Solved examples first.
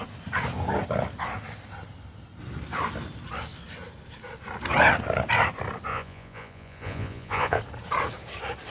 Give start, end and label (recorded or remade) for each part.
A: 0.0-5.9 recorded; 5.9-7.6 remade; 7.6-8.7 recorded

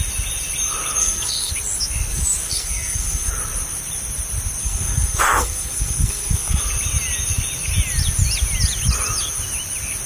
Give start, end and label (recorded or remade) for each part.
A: 0.0-1.0 recorded; 1.0-1.5 remade; 1.5-2.1 recorded; 2.1-3.3 remade; 3.3-4.6 recorded; 4.6-6.6 remade; 6.6-10.1 recorded

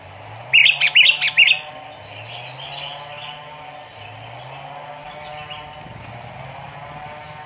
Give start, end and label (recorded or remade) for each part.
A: 0.0-5.3 remade; 5.3-6.0 recorded; 6.0-7.5 remade

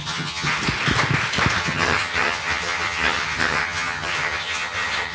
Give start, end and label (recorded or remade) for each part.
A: 0.0-0.6 remade; 0.6-1.6 recorded; 1.6-5.1 remade

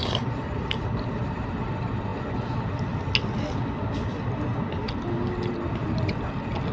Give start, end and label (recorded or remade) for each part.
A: 0.0-1.7 remade; 1.7-6.7 recorded